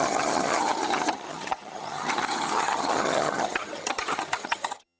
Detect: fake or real fake